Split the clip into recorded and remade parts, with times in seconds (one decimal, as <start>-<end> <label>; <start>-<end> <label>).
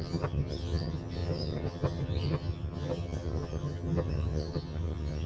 0.0-5.3 remade